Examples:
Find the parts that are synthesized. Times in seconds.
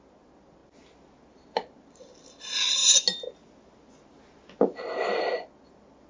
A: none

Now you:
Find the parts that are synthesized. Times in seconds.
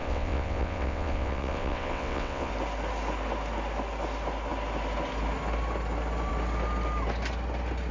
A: 0.0-2.5 (vocoder, WaveNeXt)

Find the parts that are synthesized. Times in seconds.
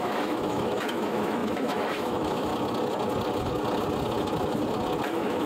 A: 0.0-2.5 (autoencoder, DAC-VAE); 5.1-5.5